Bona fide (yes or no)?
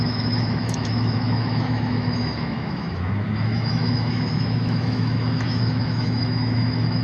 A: no